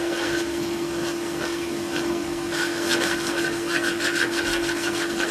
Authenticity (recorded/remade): remade